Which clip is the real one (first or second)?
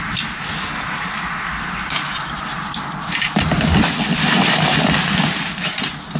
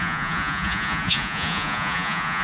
first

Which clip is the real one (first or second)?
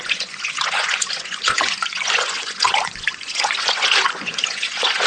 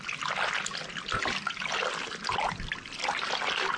second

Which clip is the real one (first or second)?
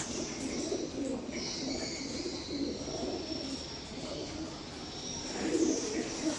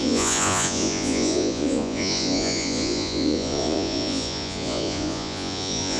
first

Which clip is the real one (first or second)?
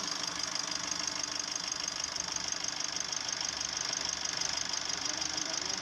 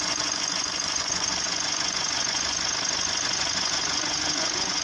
first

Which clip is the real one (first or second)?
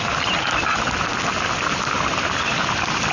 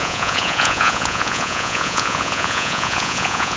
first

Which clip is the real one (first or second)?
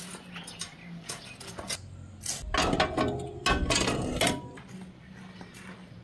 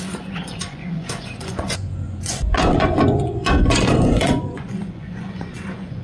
first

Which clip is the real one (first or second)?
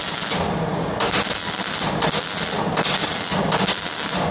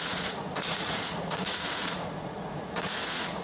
first